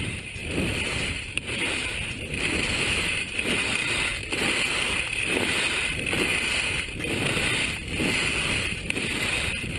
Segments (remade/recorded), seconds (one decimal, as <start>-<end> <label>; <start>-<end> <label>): 0.0-6.3 remade; 6.3-8.7 recorded; 8.7-9.8 remade